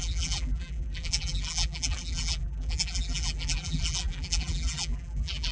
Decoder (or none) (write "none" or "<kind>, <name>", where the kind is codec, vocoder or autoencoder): vocoder, BigVGAN v2